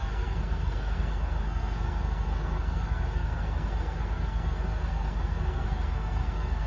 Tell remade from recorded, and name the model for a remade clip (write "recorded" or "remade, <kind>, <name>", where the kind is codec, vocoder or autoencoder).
remade, codec, SNAC